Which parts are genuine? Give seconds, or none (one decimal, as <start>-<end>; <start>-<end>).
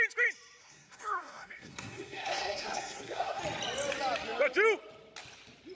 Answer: 0.0-0.6; 3.4-5.7